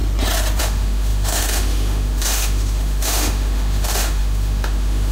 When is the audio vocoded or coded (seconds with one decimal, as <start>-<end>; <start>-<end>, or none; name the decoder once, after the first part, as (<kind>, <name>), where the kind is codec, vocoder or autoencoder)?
0.6-5.1 (autoencoder, DAC-VAE)

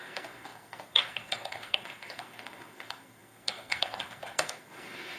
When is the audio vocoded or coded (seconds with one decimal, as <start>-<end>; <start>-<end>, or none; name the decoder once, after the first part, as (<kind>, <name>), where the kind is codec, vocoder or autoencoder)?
0.0-5.2 (codec, SNAC)